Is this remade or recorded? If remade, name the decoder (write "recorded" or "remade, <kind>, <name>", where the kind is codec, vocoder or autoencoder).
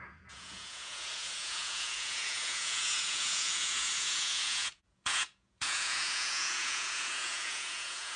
remade, vocoder, Vocos